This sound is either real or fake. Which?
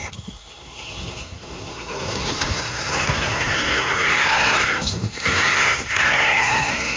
fake